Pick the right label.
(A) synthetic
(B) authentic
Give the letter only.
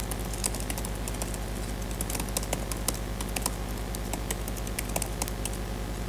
B